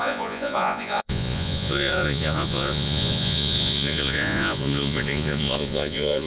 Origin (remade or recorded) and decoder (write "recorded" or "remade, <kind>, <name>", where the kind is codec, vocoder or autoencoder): remade, vocoder, Vocos